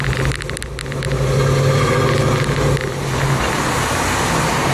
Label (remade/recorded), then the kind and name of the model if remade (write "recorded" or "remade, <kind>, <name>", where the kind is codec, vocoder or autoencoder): recorded